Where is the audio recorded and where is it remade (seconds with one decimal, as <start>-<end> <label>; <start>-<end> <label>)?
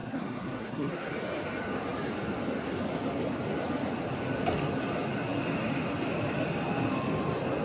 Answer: 0.0-1.1 remade; 1.1-7.6 recorded